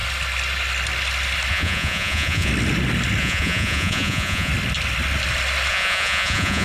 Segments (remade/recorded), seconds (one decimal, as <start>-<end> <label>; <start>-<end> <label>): 0.0-1.5 recorded; 1.5-2.5 remade; 2.5-3.2 recorded; 3.2-4.5 remade; 4.5-5.7 recorded; 5.7-6.6 remade